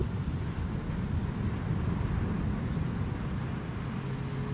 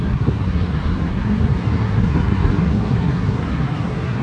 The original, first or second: first